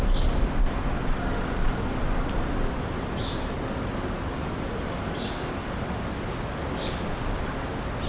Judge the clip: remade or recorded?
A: recorded